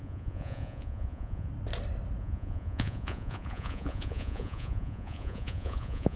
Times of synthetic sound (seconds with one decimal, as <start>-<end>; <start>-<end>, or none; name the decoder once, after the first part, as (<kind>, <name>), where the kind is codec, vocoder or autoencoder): 0.0-1.5 (vocoder, Vocos); 2.2-6.2